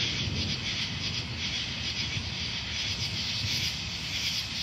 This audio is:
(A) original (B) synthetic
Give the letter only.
A